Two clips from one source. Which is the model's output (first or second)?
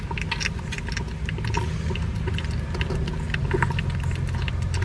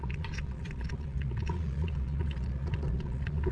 second